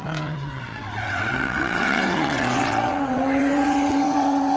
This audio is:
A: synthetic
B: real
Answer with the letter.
A